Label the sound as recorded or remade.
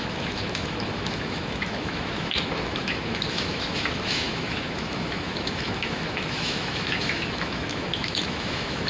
remade